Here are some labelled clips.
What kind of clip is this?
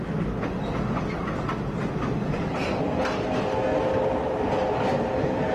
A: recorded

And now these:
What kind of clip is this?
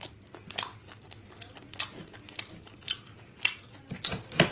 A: recorded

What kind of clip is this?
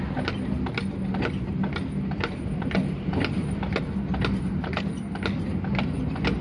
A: recorded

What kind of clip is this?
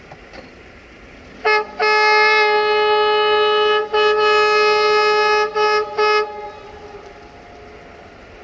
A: recorded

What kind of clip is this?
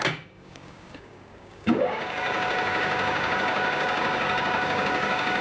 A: remade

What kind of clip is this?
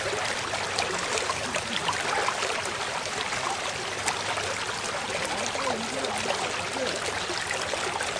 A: recorded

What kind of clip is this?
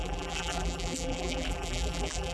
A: remade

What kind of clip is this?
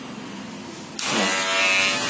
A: recorded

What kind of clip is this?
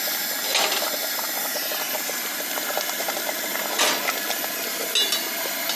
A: recorded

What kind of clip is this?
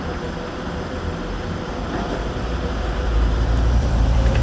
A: remade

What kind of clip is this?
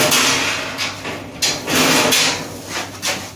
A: recorded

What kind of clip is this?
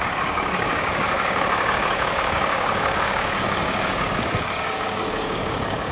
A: remade